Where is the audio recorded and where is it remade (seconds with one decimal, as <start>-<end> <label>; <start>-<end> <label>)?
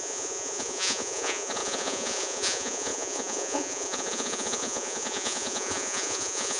0.0-6.6 remade